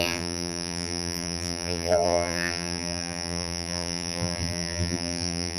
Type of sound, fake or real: fake